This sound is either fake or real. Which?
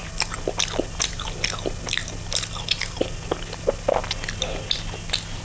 real